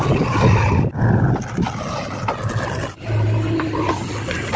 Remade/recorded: recorded